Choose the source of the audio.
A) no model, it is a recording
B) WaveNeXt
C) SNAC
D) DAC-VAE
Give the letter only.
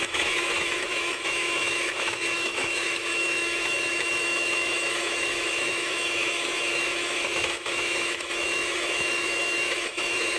D